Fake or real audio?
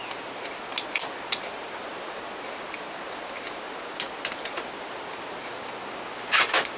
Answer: real